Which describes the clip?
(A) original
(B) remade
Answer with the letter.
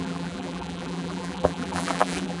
B